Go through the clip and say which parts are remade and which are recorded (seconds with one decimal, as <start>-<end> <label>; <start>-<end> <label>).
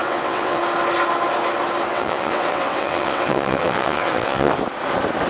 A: 0.0-0.6 remade; 0.6-1.9 recorded; 1.9-4.5 remade; 4.5-5.3 recorded